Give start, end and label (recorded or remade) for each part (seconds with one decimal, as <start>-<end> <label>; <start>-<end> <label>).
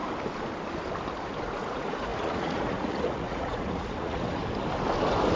0.0-1.4 recorded; 1.4-4.4 remade; 4.4-5.4 recorded